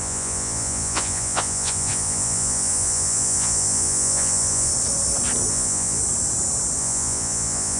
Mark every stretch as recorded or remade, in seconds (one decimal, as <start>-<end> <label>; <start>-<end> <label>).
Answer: 0.0-4.7 remade; 4.7-5.5 recorded; 5.5-6.0 remade; 6.0-6.8 recorded; 6.8-7.8 remade